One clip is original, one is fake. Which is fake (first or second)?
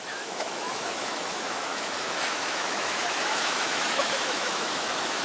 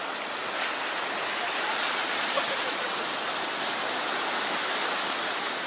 first